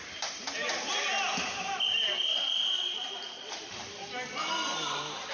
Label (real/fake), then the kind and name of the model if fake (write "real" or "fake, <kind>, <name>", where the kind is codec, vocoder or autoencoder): fake, vocoder, BigVGAN v2